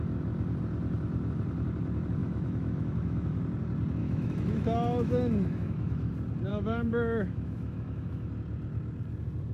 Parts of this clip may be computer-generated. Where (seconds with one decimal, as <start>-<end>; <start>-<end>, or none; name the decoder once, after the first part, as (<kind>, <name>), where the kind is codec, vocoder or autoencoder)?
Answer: 2.2-3.4 (autoencoder, DAC-VAE); 4.0-6.1; 6.5-8.3